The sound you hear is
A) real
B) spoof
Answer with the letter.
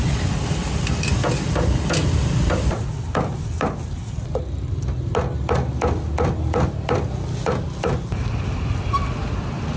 A